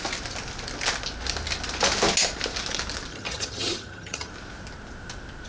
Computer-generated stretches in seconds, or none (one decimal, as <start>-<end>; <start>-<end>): 3.1-4.3